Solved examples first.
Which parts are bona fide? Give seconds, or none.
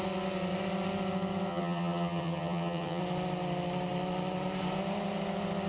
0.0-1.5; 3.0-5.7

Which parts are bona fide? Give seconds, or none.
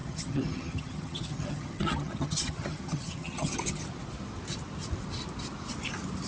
3.8-6.3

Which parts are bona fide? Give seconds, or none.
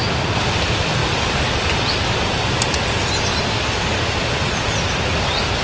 0.0-5.6